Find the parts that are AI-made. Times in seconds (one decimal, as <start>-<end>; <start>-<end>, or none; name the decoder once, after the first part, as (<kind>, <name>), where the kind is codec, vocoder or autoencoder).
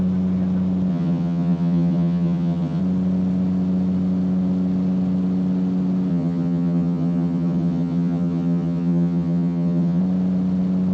0.9-2.8 (vocoder, HiFi-GAN); 6.1-10.0